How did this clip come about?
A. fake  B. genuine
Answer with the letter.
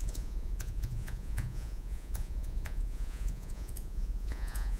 A